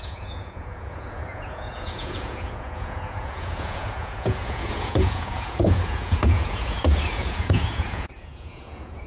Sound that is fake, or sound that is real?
fake